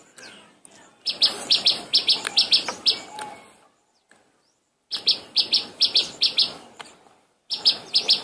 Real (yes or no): yes